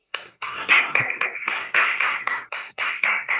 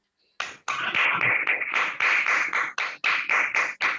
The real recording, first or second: second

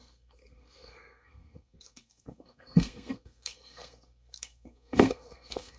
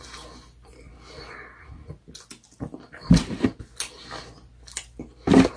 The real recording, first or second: second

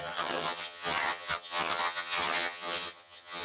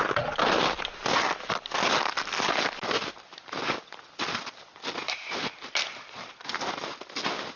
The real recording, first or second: second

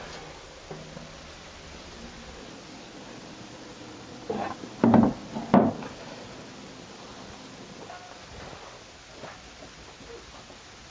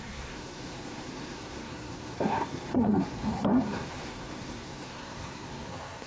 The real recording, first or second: first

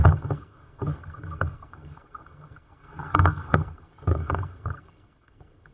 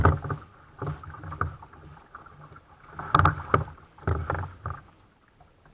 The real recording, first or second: second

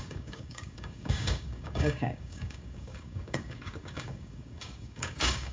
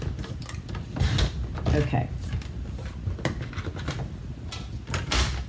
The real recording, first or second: second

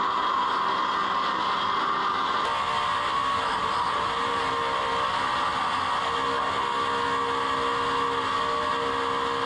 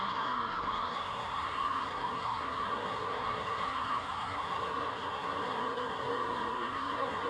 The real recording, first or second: first